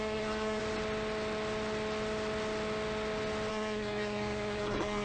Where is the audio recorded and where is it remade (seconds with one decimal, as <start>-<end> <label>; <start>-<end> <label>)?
0.0-0.6 remade; 0.6-3.5 recorded; 3.5-5.0 remade